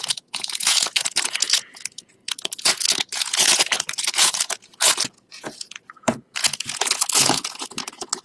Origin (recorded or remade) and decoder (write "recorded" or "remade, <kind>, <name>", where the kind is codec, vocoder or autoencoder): remade, vocoder, Vocos